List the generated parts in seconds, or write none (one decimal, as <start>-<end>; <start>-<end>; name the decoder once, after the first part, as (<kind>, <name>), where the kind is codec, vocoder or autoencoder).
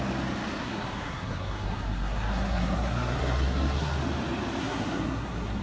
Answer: 0.6-4.0 (codec, SNAC); 4.6-5.6